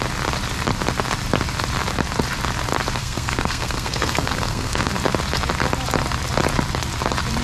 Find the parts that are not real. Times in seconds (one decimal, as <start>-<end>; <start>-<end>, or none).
3.0-4.9